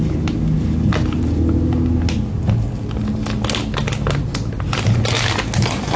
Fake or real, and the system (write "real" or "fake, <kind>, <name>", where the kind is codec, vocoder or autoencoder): real